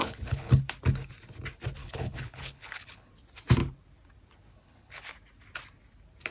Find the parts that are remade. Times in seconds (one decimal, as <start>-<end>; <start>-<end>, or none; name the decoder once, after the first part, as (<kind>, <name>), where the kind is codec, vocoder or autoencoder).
0.0-0.6 (codec, HILCodec); 1.8-3.1; 4.5-5.1